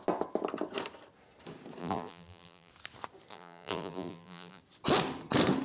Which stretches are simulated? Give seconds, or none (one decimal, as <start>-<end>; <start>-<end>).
1.8-2.7; 3.3-4.6